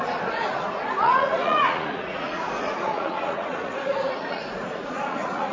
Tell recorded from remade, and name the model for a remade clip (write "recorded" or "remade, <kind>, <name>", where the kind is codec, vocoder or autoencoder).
remade, vocoder, Vocos